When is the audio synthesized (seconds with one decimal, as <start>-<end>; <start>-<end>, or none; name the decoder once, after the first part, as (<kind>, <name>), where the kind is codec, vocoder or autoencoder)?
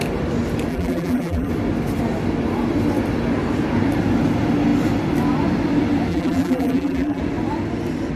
0.7-1.5 (vocoder, BigVGAN v2); 6.1-7.2